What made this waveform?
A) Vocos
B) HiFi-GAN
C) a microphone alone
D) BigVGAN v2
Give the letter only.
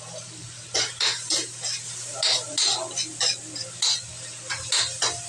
C